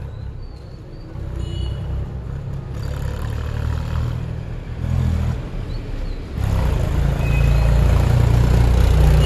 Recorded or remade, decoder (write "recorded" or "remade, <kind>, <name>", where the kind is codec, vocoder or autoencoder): recorded